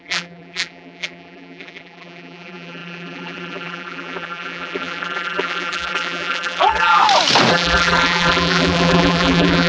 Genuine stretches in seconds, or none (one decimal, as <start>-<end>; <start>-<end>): 7.0-7.5